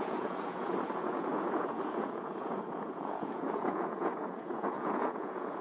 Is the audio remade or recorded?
remade